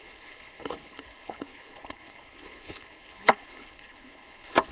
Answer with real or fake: fake